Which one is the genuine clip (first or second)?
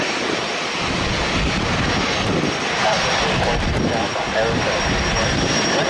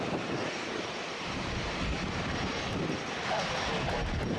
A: first